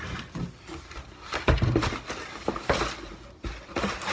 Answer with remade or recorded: recorded